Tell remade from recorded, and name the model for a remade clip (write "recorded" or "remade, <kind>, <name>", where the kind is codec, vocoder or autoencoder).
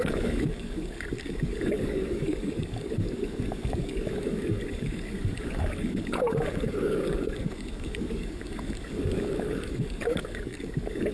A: remade, codec, DAC